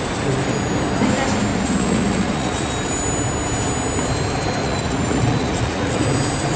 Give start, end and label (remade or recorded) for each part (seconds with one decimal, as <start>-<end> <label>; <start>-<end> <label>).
0.0-1.5 recorded; 1.5-2.7 remade; 2.7-4.6 recorded; 4.6-6.0 remade; 6.0-6.6 recorded